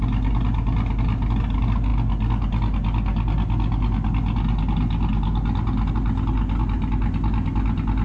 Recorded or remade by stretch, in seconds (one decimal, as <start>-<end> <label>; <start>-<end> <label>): 0.0-8.0 recorded